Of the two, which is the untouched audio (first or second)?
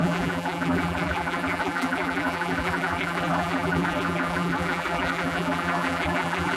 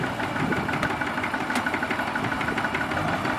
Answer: second